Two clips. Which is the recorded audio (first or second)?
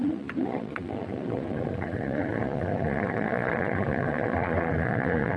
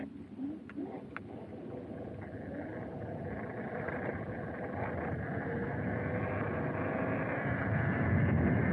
second